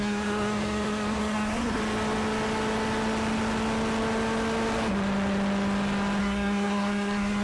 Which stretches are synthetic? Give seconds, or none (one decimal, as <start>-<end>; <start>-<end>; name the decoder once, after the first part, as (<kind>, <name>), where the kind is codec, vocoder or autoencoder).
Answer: 0.0-1.8 (codec, SNAC); 6.2-7.4